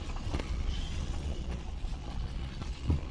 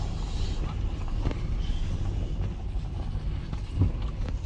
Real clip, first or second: second